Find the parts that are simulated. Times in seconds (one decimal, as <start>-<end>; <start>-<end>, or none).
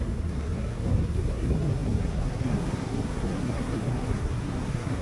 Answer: 0.0-5.0